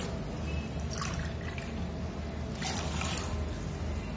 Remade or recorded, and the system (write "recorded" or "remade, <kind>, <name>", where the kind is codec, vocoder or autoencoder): recorded